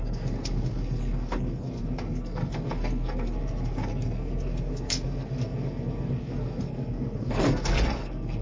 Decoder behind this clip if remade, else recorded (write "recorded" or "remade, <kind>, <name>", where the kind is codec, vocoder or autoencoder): remade, codec, SNAC